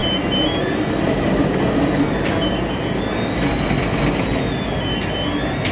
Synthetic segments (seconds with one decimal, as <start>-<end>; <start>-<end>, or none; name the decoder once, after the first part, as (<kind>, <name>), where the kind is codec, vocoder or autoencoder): none